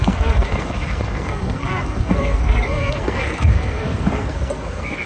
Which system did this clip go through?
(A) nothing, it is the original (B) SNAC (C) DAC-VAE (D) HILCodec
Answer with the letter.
B